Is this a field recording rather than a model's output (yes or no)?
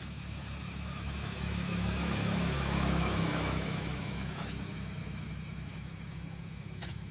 no